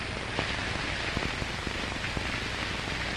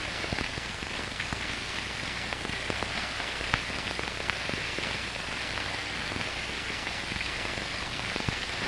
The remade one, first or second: second